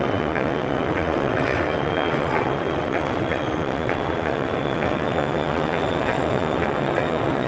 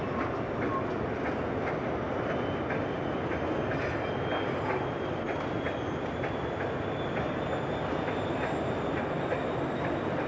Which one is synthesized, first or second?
first